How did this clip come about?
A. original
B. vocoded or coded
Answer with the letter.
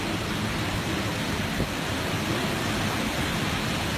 A